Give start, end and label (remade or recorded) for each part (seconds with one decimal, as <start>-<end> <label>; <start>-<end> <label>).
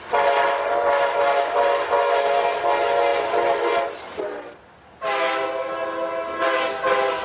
0.0-7.2 recorded